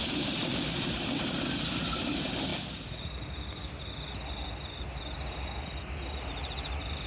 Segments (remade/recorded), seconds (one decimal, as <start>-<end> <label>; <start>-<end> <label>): 0.0-7.1 recorded